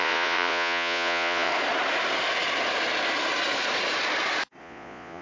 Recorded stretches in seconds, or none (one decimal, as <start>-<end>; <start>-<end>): 1.5-4.6